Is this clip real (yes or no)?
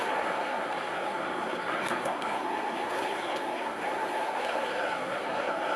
no